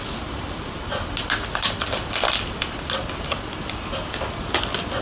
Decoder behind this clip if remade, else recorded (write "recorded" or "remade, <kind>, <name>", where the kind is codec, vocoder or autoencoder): recorded